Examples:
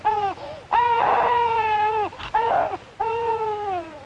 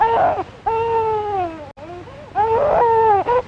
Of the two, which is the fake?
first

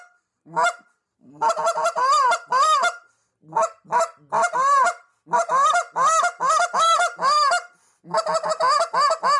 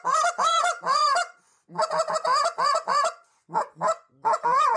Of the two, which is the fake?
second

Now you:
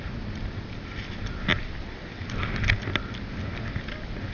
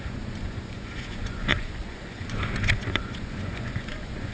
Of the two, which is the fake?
second